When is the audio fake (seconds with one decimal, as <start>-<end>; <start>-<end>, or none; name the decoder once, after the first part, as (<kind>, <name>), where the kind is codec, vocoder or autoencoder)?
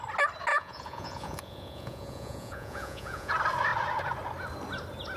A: 0.5-3.3 (vocoder, Vocos)